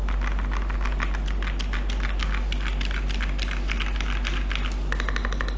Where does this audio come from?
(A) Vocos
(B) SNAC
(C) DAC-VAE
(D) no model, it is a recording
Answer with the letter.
D